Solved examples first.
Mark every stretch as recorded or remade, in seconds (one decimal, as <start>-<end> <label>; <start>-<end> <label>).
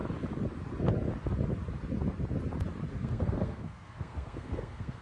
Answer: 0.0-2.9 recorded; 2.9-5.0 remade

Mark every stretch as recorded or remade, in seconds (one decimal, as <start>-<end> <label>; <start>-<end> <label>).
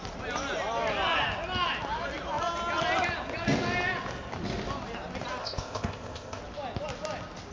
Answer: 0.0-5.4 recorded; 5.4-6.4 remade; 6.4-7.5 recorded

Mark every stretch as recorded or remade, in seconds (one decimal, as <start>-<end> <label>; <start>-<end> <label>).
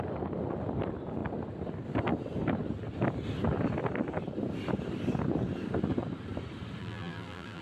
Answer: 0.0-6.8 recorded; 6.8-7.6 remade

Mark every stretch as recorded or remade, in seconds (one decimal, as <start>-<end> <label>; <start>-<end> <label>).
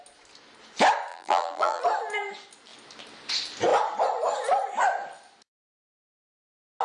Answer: 0.0-1.1 recorded; 1.1-1.8 remade; 1.8-6.8 recorded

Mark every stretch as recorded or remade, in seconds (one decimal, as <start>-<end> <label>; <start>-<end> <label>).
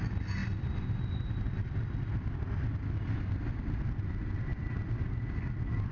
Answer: 0.0-5.9 recorded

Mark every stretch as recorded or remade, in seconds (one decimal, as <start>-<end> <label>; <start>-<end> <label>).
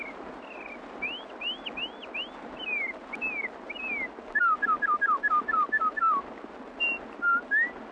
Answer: 0.0-7.9 recorded